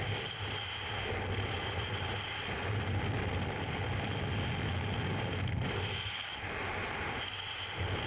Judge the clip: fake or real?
real